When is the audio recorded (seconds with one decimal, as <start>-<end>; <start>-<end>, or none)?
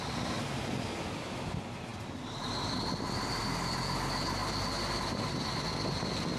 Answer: 0.0-6.4